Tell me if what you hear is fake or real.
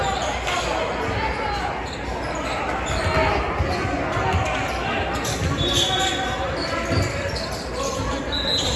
real